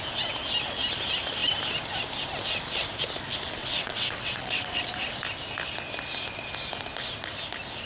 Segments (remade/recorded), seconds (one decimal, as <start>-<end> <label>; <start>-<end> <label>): 0.0-3.6 recorded; 3.6-4.8 remade; 4.8-7.9 recorded